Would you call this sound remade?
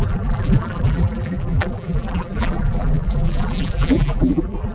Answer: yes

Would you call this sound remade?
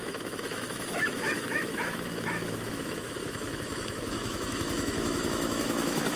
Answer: yes